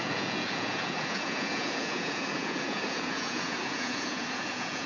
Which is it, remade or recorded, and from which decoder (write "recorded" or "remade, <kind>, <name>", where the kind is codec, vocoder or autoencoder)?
remade, vocoder, Vocos